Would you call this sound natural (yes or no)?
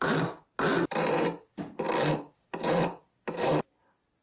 yes